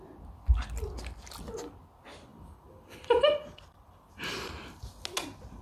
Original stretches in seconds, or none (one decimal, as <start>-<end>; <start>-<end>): 0.0-2.3; 4.5-5.6